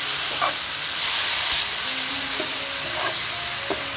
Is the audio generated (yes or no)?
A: no